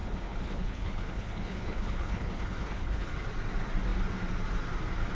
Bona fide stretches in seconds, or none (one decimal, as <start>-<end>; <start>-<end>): 3.1-5.1